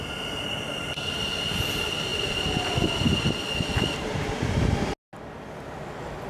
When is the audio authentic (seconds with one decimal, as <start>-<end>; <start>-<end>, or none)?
0.0-6.3